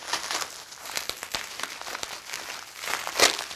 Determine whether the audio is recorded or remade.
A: recorded